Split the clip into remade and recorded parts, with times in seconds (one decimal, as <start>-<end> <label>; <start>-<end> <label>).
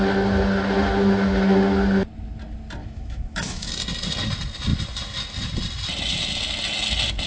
0.0-2.8 recorded; 2.8-3.7 remade; 3.7-7.3 recorded